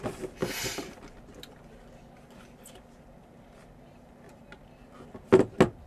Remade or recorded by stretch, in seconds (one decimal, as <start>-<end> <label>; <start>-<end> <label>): 0.0-5.9 recorded